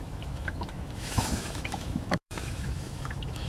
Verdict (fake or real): fake